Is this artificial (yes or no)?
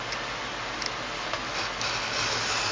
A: no